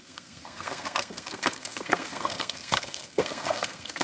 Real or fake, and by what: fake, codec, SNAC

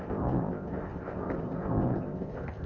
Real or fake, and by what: fake, codec, ZipCodec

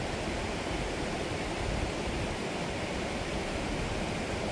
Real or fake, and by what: real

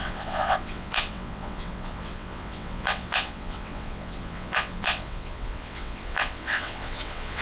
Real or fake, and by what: fake, vocoder, WaveNeXt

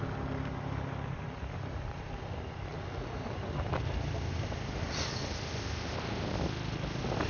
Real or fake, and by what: real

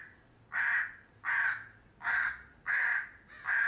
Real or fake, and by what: real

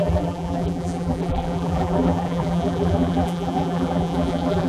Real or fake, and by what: fake, vocoder, BigVGAN v2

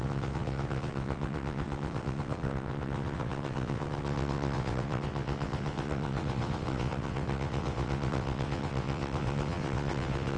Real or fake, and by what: fake, vocoder, WaveNeXt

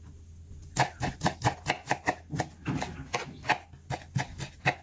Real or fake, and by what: real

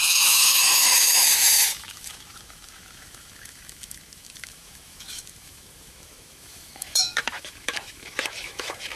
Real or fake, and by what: fake, autoencoder, DAC-VAE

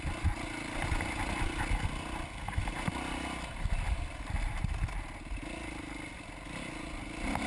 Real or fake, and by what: real